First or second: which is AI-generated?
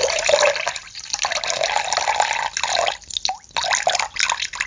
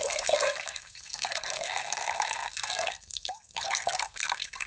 second